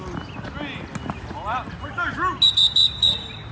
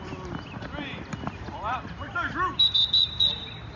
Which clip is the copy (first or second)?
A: second